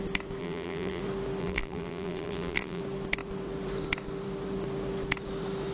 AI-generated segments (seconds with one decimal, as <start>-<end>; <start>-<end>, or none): 0.4-1.0; 1.4-2.8